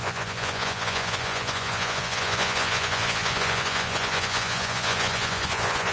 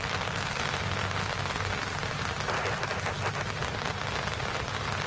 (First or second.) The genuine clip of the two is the second